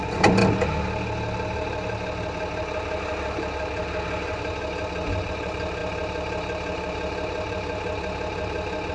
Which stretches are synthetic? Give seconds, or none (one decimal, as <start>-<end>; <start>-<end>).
0.0-0.4; 5.3-5.8